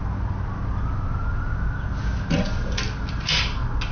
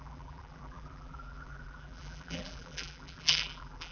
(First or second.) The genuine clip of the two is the first